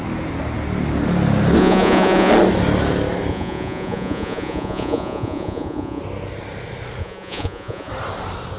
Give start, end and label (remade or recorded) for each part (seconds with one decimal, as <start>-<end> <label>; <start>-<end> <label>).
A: 0.0-1.6 recorded; 1.6-2.3 remade; 2.3-3.3 recorded; 3.3-6.0 remade; 6.0-7.0 recorded; 7.0-7.9 remade; 7.9-8.6 recorded